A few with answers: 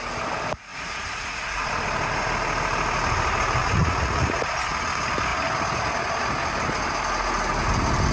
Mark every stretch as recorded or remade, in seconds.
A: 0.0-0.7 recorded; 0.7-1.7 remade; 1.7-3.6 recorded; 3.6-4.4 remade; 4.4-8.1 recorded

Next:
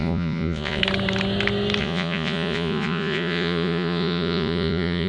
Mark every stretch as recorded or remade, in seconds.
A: 0.0-0.8 remade; 0.8-1.8 recorded; 1.8-5.1 remade

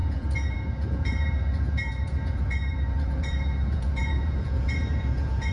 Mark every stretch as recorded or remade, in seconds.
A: 0.0-5.5 remade

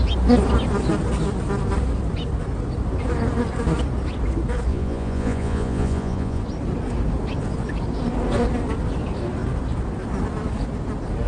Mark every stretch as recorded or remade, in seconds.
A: 0.0-4.7 recorded; 4.7-6.4 remade; 6.4-11.3 recorded

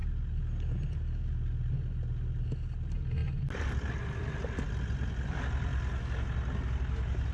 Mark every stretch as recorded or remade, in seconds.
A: 0.0-7.3 recorded

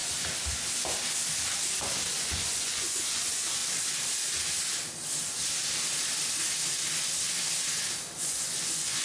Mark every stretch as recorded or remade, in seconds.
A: 0.0-2.2 recorded; 2.2-3.6 remade; 3.6-8.2 recorded; 8.2-9.0 remade